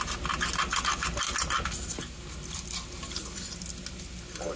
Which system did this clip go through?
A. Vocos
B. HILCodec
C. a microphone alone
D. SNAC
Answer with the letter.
C